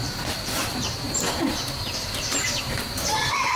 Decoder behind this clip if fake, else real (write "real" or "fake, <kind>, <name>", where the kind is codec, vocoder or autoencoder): fake, vocoder, BigVGAN v2